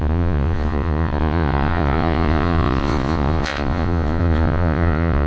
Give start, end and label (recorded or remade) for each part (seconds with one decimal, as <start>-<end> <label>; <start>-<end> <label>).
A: 0.0-5.3 remade